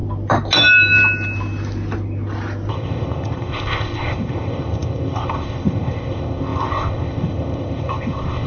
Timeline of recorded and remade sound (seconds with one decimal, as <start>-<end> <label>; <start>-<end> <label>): 0.0-2.7 recorded; 2.7-8.5 remade